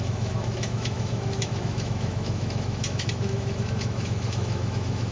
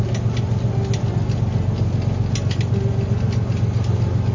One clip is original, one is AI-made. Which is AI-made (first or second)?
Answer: first